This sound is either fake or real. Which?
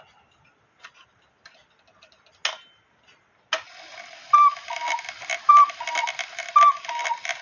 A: real